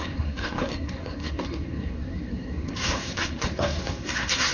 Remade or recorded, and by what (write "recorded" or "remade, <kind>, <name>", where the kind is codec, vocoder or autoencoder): remade, codec, SNAC